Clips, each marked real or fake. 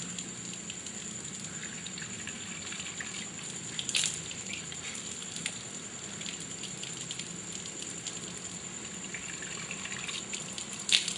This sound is real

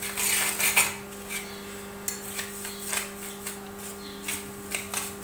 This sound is real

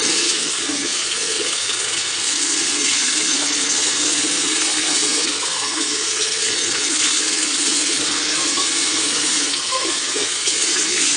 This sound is fake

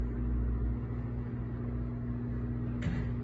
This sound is real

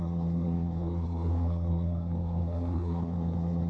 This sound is fake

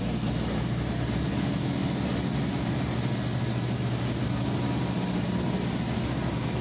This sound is real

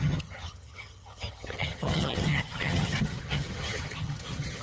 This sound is fake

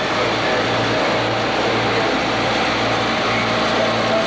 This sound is real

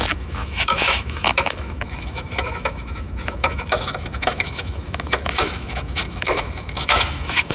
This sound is fake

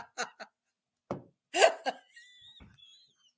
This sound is real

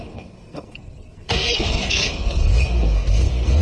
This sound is fake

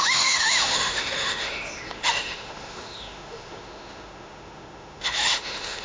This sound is fake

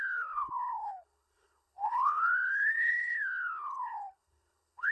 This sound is fake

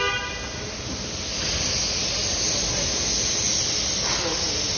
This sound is real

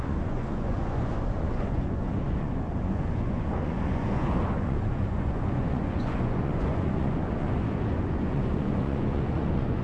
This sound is fake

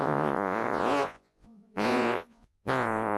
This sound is fake